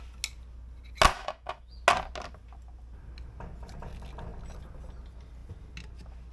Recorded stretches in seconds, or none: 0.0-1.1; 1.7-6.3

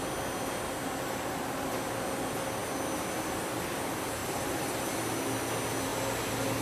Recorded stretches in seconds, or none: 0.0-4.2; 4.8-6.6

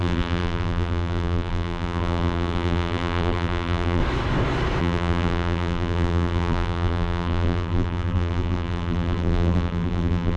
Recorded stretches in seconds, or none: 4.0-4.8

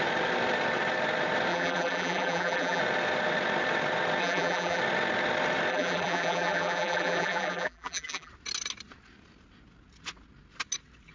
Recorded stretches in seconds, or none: 0.0-1.5; 2.8-4.2; 4.8-5.7; 8.3-11.1

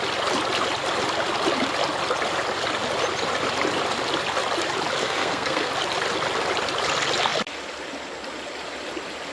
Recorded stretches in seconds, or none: 0.0-5.0; 5.7-9.3

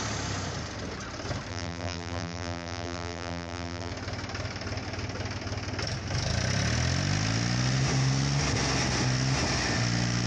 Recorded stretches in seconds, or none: 0.0-1.5; 3.9-10.3

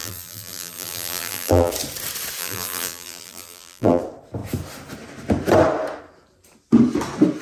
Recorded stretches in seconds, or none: 1.7-2.4; 4.0-7.4